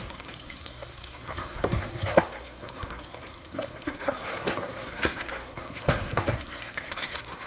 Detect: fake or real fake